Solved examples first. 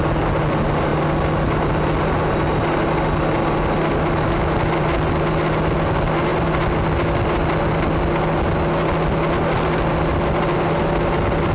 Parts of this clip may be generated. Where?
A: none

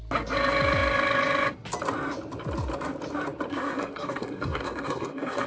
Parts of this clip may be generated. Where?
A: 3.5-5.5 (codec, SNAC)

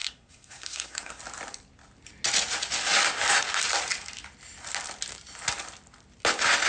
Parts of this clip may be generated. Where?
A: 0.0-1.2 (codec, SNAC)

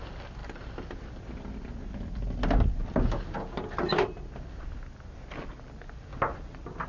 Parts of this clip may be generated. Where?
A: none